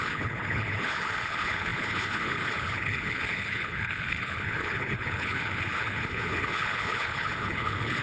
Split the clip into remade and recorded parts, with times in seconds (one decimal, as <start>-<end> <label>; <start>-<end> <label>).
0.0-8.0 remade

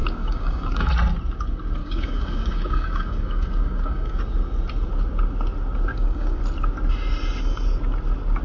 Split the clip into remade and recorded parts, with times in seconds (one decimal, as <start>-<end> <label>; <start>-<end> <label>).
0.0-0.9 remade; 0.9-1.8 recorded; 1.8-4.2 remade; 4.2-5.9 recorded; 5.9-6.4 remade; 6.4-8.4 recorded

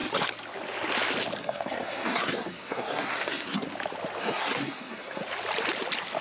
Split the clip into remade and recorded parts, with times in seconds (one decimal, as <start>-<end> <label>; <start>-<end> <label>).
0.0-1.4 recorded; 1.4-3.7 remade; 3.7-4.2 recorded; 4.2-5.2 remade; 5.2-6.2 recorded

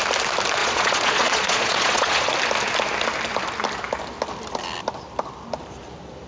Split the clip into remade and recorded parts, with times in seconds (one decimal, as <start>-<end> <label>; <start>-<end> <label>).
0.0-0.6 recorded; 0.6-2.3 remade; 2.3-6.3 recorded

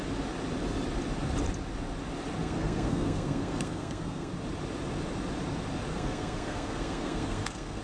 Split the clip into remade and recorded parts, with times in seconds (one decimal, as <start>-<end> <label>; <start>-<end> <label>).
0.0-2.4 recorded; 2.4-4.3 remade; 4.3-5.9 recorded; 5.9-7.8 remade

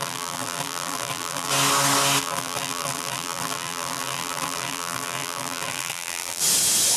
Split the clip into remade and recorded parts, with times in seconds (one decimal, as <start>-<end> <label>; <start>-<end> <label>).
0.0-1.5 remade; 1.5-2.2 recorded; 2.2-6.4 remade; 6.4-7.0 recorded